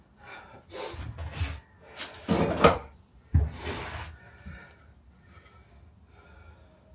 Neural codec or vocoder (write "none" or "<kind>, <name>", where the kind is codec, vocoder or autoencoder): none